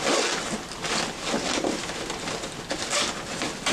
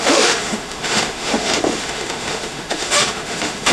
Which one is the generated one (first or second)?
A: second